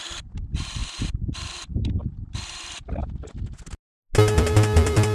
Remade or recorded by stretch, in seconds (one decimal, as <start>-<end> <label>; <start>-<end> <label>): 0.0-3.0 remade; 3.0-4.4 recorded; 4.4-5.1 remade